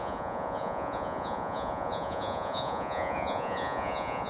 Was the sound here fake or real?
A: fake